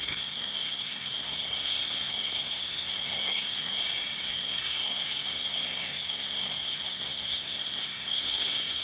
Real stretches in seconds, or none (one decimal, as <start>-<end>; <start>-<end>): 3.8-4.3